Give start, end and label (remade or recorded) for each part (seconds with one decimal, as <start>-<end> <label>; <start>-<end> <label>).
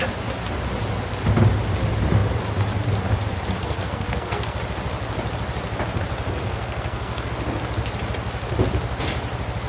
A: 0.0-3.6 recorded; 3.6-4.6 remade; 4.6-6.4 recorded; 6.4-7.3 remade; 7.3-9.7 recorded